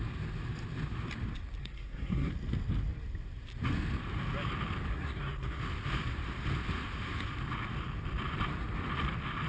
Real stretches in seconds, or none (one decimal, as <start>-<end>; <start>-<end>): 0.0-1.6; 2.3-4.9; 5.6-9.5